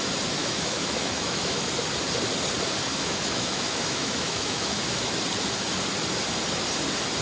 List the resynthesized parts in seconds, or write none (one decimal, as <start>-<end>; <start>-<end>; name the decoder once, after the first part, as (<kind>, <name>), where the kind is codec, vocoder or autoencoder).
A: 0.4-1.6 (autoencoder, DAC-VAE); 2.9-4.8

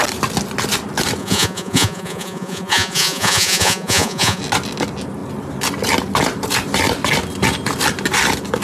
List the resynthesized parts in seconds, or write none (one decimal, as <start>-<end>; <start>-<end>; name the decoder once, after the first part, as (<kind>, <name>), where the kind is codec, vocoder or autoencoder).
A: 1.2-4.4 (vocoder, Vocos)

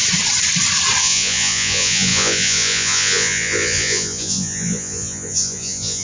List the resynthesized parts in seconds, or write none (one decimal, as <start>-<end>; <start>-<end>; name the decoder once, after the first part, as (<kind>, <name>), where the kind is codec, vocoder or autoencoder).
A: 1.0-6.0 (vocoder, Vocos)

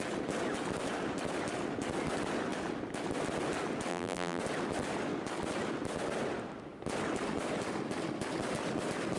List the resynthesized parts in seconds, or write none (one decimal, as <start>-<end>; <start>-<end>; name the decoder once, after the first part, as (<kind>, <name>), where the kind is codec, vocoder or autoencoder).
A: 3.9-4.4 (vocoder, BigVGAN v2)

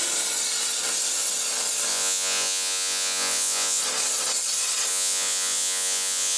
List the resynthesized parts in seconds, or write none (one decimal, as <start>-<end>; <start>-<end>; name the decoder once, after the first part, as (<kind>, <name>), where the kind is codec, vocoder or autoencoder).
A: 1.9-3.8 (vocoder, Vocos); 4.9-6.4

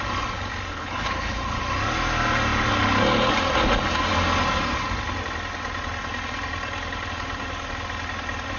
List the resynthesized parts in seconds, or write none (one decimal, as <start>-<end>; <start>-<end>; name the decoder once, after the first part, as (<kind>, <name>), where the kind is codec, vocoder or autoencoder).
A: 0.7-1.6 (codec, HILCodec)

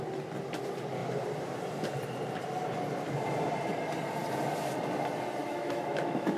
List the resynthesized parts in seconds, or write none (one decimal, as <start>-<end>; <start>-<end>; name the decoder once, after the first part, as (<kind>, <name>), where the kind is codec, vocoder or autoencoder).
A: 5.4-6.4 (autoencoder, DAC-VAE)